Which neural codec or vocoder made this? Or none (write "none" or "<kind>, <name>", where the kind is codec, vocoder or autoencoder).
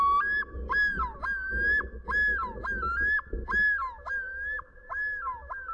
none